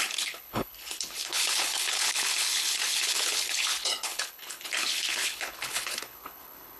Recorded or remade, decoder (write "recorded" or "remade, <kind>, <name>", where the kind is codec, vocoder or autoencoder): remade, codec, HILCodec